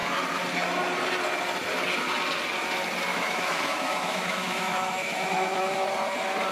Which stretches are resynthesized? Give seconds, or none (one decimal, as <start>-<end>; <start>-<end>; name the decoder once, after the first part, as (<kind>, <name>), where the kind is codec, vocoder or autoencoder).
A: 3.1-5.7 (autoencoder, DAC-VAE)